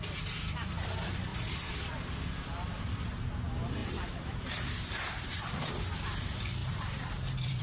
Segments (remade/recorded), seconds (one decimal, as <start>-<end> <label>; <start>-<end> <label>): 0.0-1.3 recorded; 1.3-1.9 remade; 1.9-3.8 recorded; 3.8-5.7 remade; 5.7-6.6 recorded; 6.6-7.6 remade